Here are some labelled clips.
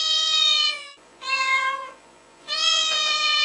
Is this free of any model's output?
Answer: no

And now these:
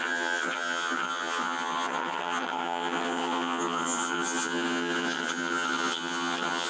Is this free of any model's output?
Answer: no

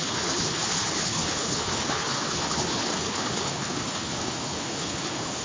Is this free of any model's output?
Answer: no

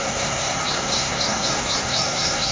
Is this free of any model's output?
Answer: no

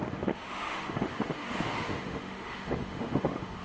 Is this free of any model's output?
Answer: no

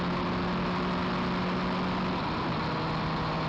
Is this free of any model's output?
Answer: yes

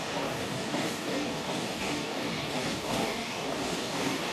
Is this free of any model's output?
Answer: no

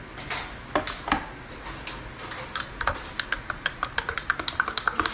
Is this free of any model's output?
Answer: yes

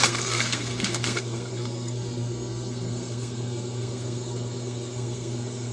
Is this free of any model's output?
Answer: no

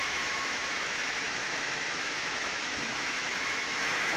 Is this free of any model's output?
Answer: no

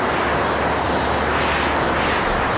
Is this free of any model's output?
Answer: yes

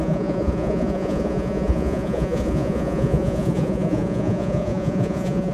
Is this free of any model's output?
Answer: no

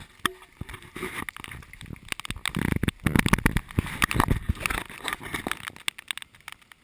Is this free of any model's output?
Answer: yes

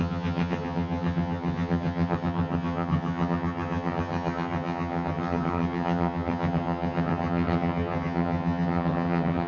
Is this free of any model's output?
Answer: no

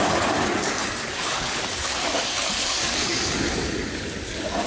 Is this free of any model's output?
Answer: no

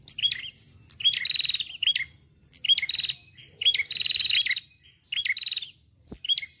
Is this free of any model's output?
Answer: no